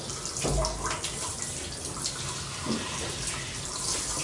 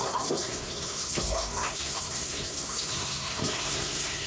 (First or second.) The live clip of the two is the first